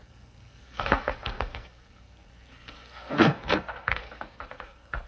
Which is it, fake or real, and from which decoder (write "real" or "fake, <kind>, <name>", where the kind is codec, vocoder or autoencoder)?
fake, codec, SNAC